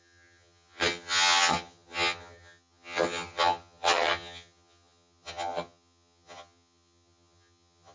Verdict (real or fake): fake